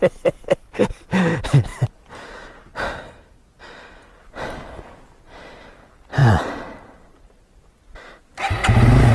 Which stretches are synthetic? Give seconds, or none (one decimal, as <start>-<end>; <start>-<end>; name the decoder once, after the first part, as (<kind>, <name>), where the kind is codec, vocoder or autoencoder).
none